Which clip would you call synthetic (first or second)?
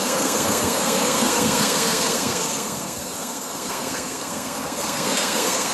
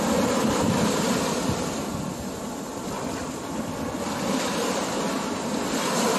first